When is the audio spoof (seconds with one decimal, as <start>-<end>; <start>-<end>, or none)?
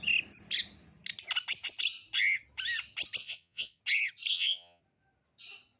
3.2-3.8; 4.3-4.8